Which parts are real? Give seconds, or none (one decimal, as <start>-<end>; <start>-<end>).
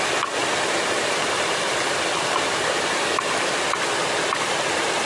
0.0-0.4; 3.5-5.1